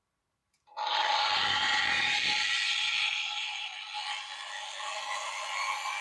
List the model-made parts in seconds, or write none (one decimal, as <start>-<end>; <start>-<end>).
0.4-3.7

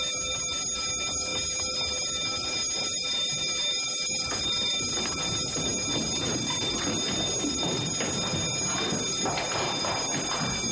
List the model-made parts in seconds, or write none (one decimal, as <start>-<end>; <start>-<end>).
none